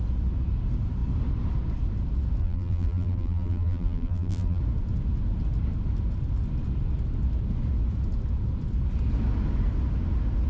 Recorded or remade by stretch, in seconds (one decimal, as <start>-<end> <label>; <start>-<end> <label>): 0.0-2.4 recorded; 2.4-4.6 remade; 4.6-10.5 recorded